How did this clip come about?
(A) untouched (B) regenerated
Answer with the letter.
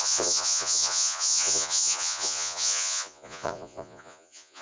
B